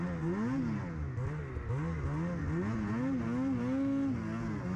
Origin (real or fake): real